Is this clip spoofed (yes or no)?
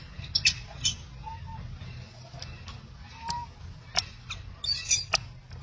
no